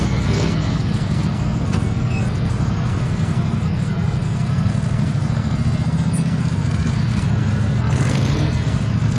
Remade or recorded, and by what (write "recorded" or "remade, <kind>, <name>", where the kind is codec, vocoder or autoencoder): remade, codec, SNAC